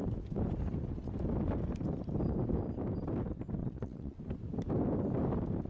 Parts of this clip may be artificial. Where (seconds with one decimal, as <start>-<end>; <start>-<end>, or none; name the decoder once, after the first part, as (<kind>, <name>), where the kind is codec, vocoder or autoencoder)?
3.6-4.2 (vocoder, WaveNeXt)